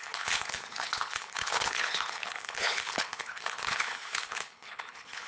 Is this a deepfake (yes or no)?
yes